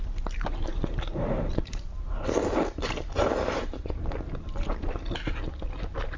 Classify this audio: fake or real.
real